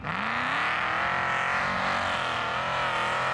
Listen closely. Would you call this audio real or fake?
real